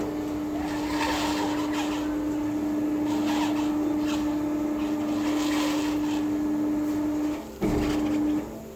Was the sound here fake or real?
real